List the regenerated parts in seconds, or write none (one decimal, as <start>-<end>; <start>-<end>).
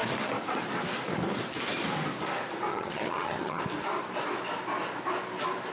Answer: 2.7-3.6